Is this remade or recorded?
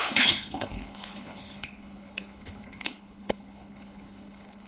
remade